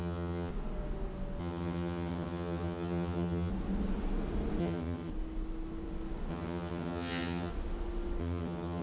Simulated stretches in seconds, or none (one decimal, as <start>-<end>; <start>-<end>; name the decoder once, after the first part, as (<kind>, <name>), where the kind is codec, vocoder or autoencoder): 0.0-0.5 (vocoder, HiFi-GAN); 1.4-3.5; 4.6-5.1; 6.3-7.5; 8.2-8.8

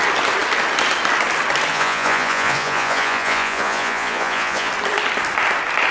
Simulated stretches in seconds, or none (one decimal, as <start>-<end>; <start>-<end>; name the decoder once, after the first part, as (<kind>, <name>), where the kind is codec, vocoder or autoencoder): 1.7-4.7 (vocoder, Vocos)

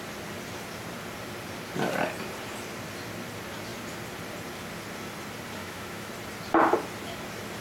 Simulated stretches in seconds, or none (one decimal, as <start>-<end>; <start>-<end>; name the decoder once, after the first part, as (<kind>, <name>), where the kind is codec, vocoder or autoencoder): 5.6-6.1 (autoencoder, DAC-VAE)

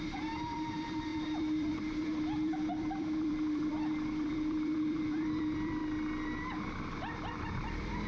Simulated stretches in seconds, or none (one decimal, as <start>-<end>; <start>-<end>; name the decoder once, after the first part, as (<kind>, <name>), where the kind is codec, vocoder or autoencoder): 0.0-5.8 (vocoder, BigVGAN v2); 7.4-8.1

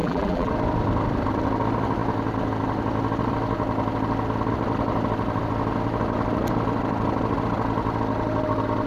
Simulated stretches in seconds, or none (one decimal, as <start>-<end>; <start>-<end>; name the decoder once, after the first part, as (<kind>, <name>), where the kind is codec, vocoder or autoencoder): 0.0-0.5 (vocoder, BigVGAN v2)

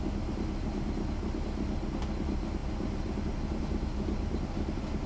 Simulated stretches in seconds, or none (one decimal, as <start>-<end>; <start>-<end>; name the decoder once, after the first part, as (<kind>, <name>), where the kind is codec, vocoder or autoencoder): none

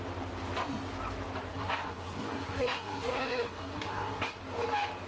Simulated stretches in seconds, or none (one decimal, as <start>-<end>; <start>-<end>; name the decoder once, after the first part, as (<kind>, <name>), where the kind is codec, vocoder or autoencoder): 1.5-4.4 (codec, SNAC)